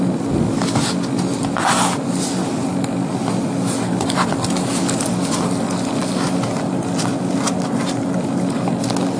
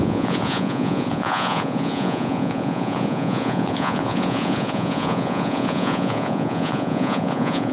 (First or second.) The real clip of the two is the first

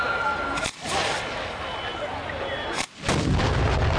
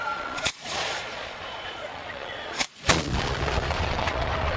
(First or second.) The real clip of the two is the first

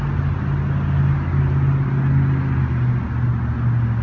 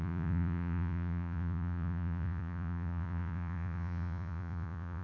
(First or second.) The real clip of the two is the first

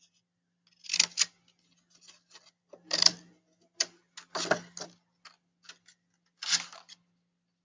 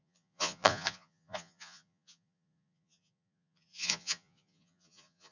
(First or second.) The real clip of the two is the first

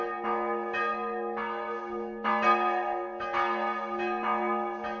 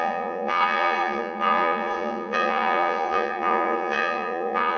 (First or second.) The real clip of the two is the first